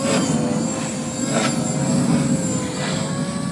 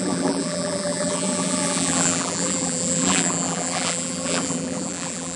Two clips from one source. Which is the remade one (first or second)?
second